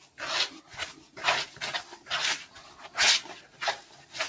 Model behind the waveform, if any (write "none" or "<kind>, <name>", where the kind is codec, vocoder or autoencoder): none